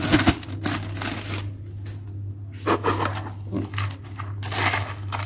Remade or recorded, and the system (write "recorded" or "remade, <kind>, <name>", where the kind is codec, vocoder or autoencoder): recorded